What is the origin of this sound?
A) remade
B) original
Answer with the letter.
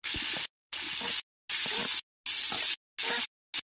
B